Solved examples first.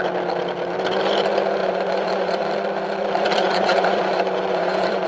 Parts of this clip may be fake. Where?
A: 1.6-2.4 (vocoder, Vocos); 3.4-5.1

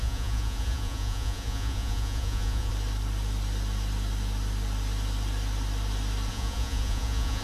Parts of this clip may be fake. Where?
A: 0.0-2.7 (vocoder, Vocos); 6.3-7.4

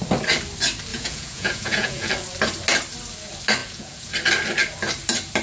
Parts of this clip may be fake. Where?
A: 0.9-2.1 (vocoder, Vocos); 3.6-4.1

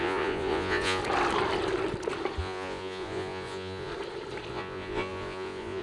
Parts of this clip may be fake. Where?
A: 0.0-1.0 (vocoder, Vocos); 2.4-3.9; 4.5-5.8

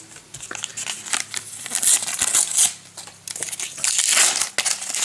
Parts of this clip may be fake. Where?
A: none

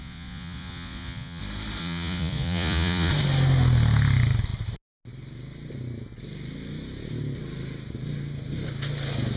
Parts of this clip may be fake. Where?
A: 0.0-1.4 (vocoder, Vocos); 1.8-3.1